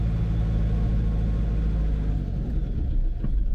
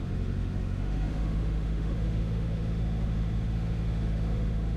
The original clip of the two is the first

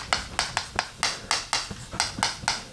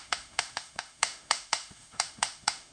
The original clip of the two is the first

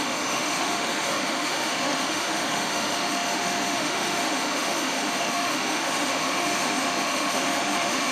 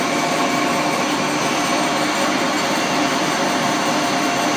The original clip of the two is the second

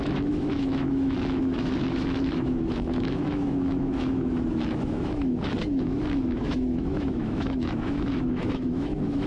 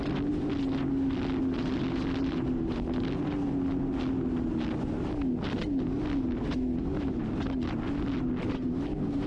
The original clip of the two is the second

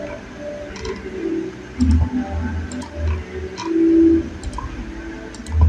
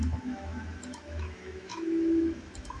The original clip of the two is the first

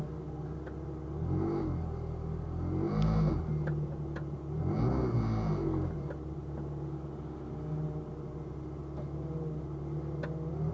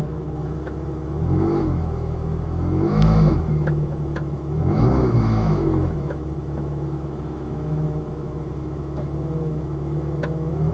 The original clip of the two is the first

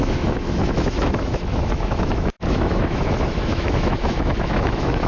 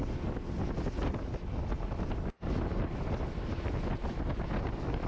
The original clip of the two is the second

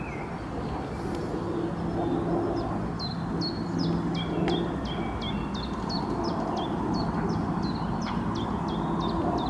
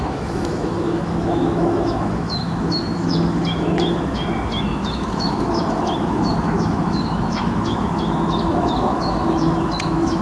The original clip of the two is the first